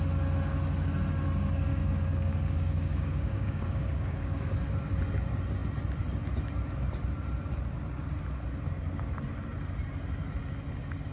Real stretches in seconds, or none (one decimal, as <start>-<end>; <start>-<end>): 0.0-1.7; 4.5-11.1